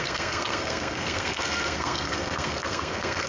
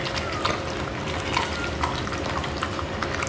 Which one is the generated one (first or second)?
first